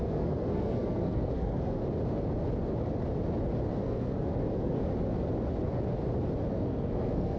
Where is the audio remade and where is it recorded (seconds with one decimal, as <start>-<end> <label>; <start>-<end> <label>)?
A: 0.0-1.8 remade; 1.8-3.7 recorded; 3.7-4.8 remade; 4.8-6.5 recorded; 6.5-7.4 remade